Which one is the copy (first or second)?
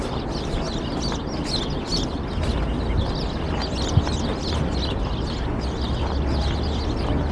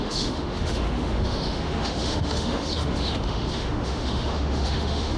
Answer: second